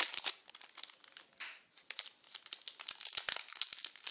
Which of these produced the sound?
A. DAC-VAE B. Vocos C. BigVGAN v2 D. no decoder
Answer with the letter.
D